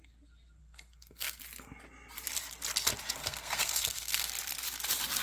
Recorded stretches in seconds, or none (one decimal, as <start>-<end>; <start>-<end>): 0.0-0.6; 1.4-3.2; 4.3-5.2